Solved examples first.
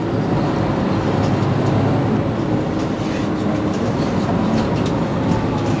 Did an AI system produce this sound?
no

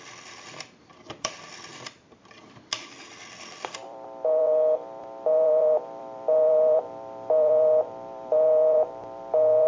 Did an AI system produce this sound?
yes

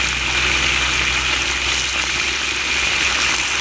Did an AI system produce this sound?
no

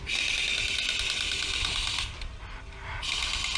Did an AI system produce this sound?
no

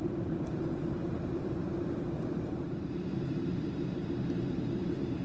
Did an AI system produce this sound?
yes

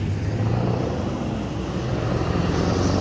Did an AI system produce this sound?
no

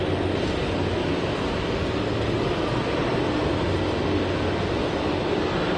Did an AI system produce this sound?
no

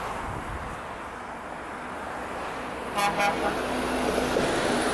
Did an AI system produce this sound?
no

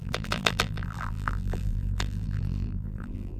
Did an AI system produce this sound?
yes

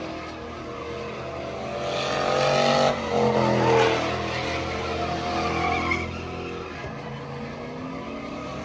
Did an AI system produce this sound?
no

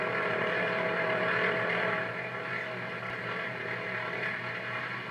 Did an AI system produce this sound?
yes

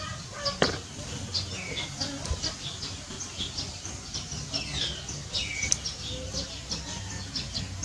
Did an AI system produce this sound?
no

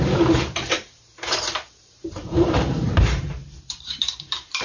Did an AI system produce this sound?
yes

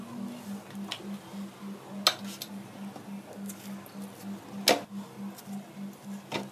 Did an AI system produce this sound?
no